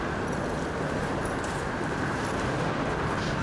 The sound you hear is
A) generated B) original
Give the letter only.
B